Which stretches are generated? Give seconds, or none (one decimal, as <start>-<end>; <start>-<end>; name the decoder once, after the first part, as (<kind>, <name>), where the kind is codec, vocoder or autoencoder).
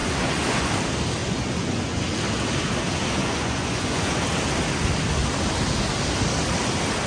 0.0-0.7 (vocoder, Vocos); 1.2-2.0; 3.2-4.2